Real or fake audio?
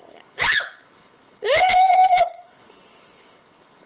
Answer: fake